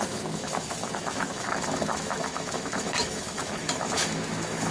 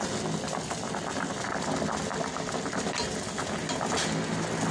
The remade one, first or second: first